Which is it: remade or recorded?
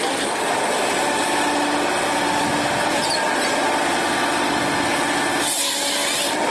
recorded